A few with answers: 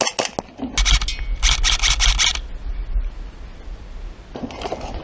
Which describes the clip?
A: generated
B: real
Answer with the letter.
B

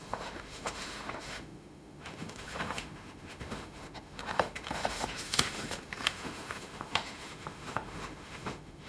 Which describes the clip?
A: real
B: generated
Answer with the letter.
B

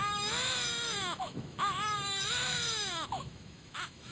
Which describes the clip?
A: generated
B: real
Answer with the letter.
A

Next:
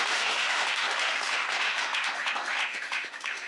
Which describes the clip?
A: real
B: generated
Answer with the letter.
B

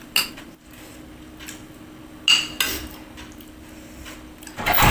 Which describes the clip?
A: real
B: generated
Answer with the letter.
A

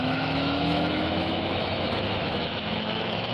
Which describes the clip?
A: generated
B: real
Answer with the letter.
A